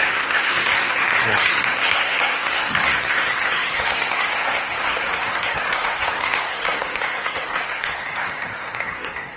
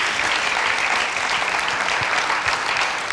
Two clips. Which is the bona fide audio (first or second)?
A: second